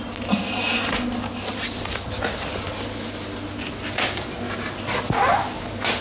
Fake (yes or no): no